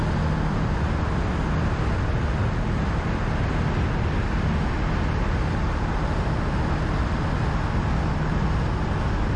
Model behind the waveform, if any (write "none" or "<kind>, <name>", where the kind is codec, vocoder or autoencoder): none